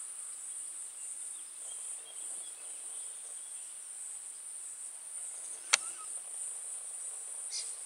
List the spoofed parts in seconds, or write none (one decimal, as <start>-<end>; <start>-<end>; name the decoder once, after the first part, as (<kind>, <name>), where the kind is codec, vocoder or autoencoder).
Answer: 0.8-2.0 (vocoder, BigVGAN v2)

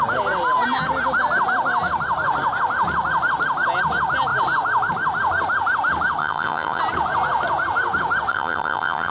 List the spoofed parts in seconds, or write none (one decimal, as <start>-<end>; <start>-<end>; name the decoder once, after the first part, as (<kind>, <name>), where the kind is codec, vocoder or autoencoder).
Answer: 6.2-6.8 (vocoder, HiFi-GAN); 8.3-9.1

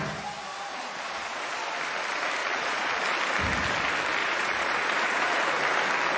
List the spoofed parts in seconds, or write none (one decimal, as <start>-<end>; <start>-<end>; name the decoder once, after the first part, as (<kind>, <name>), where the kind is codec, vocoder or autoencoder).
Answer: 0.7-1.4 (vocoder, Vocos); 2.4-3.0; 4.2-5.4